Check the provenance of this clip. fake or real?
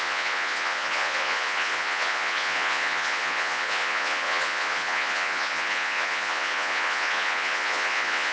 fake